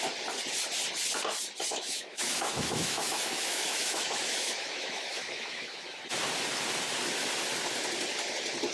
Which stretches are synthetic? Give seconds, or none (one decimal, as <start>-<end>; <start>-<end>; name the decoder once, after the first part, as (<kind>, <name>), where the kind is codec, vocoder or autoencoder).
1.7-6.0 (autoencoder, DAC-VAE)